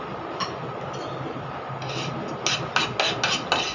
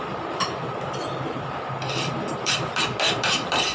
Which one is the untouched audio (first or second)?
first